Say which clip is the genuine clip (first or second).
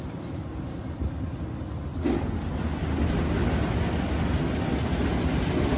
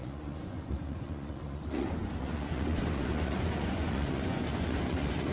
first